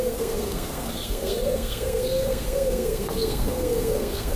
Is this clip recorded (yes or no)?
no